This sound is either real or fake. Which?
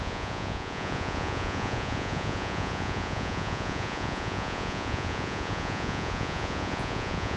fake